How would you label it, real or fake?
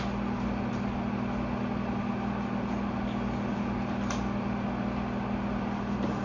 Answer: real